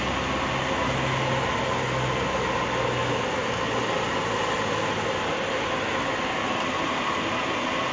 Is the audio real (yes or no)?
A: yes